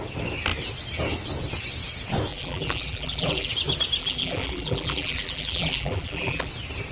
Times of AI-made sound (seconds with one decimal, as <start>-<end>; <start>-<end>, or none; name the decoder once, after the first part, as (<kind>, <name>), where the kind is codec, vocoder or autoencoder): 2.3-3.5 (vocoder, BigVGAN v2); 4.0-6.5